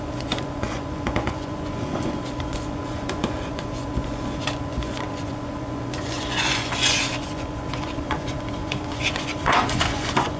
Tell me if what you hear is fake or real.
fake